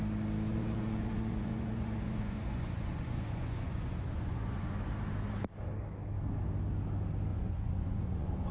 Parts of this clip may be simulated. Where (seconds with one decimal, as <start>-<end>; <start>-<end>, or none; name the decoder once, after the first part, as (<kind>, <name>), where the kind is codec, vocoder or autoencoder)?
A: 0.5-4.9 (vocoder, Vocos); 7.3-8.5